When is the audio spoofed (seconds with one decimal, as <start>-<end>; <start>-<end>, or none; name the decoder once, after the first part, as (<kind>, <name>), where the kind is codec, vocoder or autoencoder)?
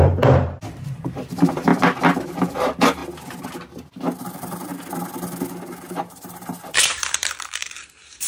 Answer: 0.0-1.7 (vocoder, BigVGAN v2); 2.4-3.0; 4.2-4.7; 5.9-8.3